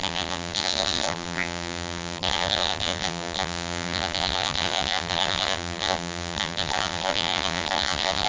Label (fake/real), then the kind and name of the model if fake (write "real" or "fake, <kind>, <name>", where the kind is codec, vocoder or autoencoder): fake, vocoder, BigVGAN v2